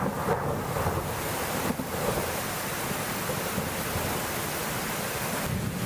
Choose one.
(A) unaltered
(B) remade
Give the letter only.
A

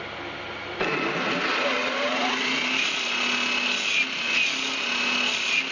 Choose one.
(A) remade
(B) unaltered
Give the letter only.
B